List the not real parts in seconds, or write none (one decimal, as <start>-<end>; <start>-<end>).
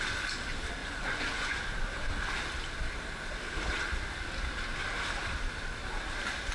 0.8-1.6